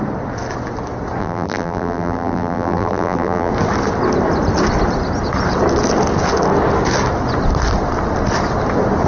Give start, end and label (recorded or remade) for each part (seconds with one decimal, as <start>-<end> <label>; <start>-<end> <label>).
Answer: 0.0-1.2 recorded; 1.2-3.5 remade; 3.5-9.1 recorded